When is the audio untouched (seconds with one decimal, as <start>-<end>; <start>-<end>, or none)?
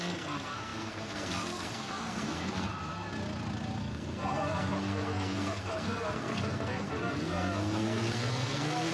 2.7-3.8